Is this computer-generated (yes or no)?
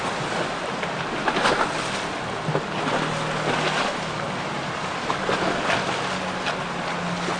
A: no